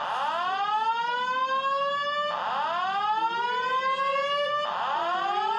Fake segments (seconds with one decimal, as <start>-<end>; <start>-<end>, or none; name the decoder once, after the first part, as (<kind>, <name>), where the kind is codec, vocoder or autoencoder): none

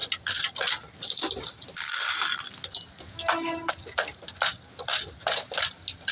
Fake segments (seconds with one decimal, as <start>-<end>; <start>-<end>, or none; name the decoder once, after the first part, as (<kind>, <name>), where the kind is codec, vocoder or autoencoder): none

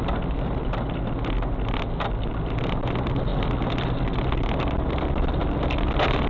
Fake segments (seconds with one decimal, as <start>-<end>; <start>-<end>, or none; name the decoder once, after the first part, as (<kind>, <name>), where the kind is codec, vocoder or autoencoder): 3.3-4.2 (vocoder, BigVGAN v2)

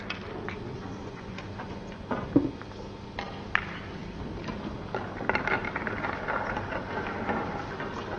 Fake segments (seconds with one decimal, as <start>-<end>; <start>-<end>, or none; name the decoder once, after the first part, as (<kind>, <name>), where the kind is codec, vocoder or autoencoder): 1.0-2.3 (vocoder, Vocos)

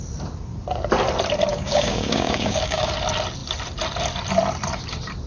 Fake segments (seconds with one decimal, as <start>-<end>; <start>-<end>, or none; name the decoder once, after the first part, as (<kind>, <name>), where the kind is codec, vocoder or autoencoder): 1.5-2.9 (codec, DAC)

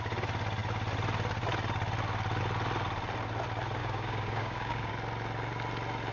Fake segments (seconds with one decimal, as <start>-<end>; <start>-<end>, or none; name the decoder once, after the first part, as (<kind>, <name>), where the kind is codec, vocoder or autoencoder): 3.8-4.9 (codec, DAC)

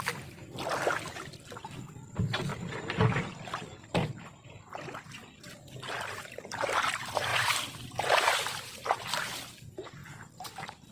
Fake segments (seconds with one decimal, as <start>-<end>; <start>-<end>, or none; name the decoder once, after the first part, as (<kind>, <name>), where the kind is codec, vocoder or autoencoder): 2.5-3.3 (vocoder, BigVGAN v2); 7.3-8.3; 10.0-10.9

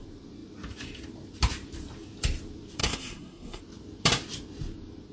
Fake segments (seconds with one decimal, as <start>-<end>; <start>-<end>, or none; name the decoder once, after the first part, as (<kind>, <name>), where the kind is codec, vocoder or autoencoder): 2.8-3.6 (codec, SNAC)